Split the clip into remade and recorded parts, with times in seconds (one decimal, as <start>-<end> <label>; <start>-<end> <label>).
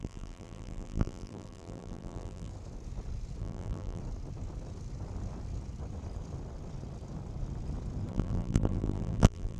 0.0-2.5 remade; 2.5-3.4 recorded; 3.4-4.0 remade; 4.0-8.1 recorded; 8.1-9.6 remade